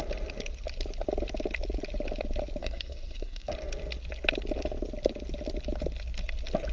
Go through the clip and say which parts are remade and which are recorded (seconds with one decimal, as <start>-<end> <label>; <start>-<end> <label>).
0.0-2.6 recorded; 2.6-3.5 remade; 3.5-6.7 recorded